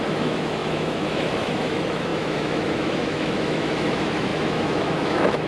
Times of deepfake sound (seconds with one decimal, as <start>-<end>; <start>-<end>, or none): 0.0-5.5